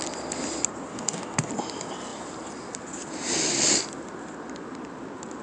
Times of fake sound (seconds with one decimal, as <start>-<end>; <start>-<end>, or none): 0.9-1.5